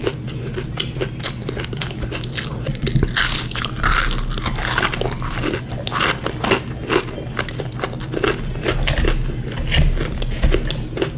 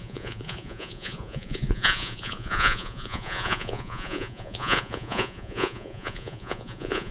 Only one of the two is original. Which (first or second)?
first